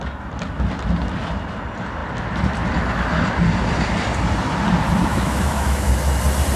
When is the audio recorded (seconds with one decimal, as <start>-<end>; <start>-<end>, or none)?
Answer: 0.0-5.1; 5.9-6.6